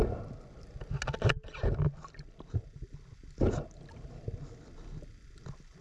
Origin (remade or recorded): recorded